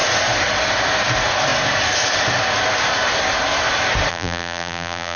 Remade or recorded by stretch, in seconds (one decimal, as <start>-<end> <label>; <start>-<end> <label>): 0.0-4.1 recorded; 4.1-5.2 remade